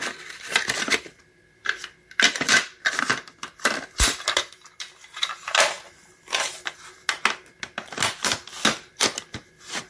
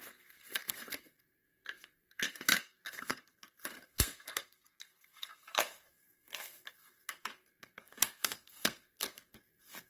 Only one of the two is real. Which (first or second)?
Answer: first